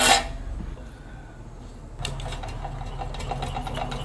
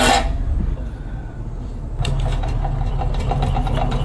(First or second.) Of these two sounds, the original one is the first